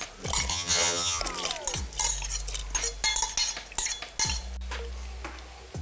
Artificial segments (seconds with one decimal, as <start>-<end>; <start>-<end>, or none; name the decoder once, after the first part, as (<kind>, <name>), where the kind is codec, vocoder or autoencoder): 0.5-1.2 (vocoder, HiFi-GAN)